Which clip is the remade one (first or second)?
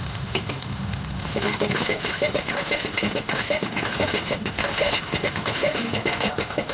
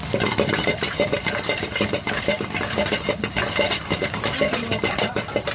first